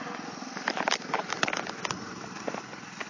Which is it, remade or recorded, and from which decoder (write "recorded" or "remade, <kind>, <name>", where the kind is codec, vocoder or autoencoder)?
recorded